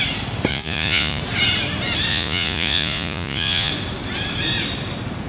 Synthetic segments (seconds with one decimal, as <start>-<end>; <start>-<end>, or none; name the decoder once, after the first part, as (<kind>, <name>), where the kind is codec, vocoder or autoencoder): 0.5-1.2 (vocoder, Vocos); 2.1-3.7